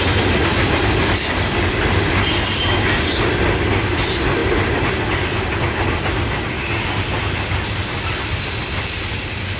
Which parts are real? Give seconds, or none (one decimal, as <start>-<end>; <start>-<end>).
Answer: 0.0-9.6

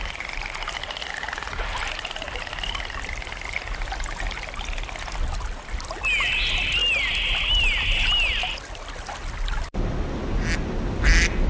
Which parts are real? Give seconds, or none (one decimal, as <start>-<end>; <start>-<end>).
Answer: 0.0-11.5

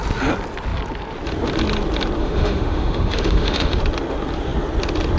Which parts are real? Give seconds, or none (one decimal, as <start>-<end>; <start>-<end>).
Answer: 0.0-2.2; 3.8-5.2

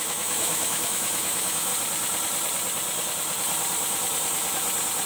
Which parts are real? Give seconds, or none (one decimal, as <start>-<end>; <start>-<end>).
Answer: 1.7-5.1

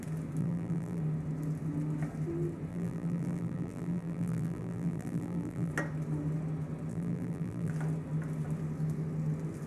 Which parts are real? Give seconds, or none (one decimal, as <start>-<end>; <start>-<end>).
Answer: 0.0-0.4; 1.0-2.7; 5.7-6.9; 7.7-9.7